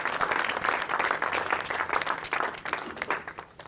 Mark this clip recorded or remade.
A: remade